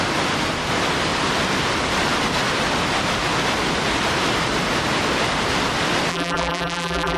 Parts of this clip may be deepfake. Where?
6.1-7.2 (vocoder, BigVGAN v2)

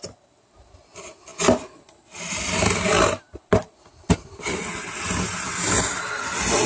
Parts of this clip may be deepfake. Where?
none

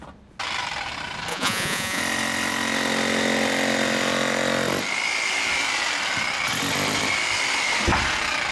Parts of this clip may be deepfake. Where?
1.3-2.0 (vocoder, Vocos)

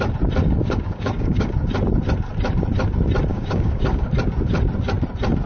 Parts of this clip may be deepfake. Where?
0.4-1.5 (codec, DAC); 3.3-4.1

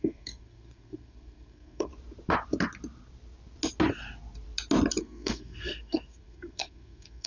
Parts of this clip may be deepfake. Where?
0.0-1.9 (codec, SNAC); 5.0-7.3